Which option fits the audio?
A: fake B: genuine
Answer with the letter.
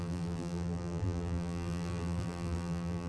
A